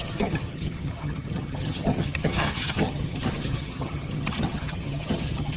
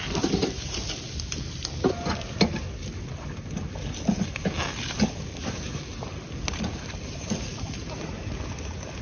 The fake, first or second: first